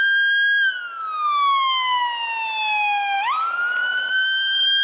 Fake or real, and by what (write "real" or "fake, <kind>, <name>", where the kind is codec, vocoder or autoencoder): real